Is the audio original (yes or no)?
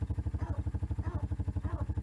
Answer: yes